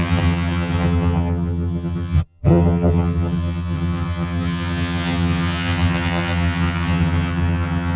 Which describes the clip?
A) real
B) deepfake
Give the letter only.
B